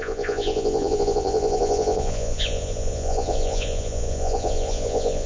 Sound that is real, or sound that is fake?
fake